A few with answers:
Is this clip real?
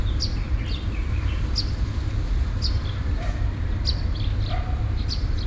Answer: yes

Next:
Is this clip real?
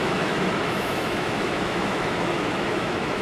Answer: no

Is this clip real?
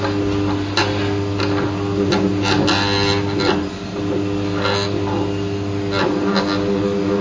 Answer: yes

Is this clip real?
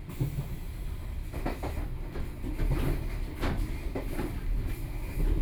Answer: yes